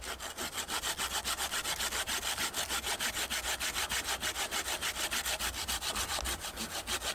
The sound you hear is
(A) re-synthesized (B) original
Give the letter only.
B